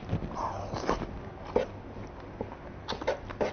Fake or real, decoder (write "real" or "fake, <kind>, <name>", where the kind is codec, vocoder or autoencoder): real